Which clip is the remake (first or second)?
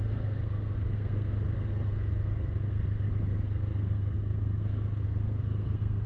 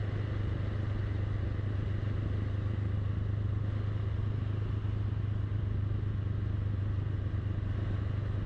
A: first